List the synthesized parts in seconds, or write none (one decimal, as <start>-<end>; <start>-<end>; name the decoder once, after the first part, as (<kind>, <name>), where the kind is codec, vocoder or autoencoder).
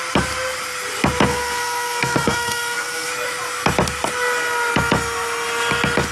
1.3-3.1 (codec, SNAC)